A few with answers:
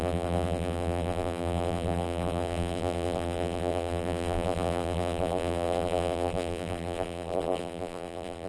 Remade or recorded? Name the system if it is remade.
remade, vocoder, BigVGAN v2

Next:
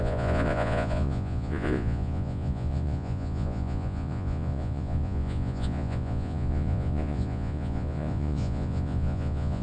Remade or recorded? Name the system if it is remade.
remade, vocoder, Vocos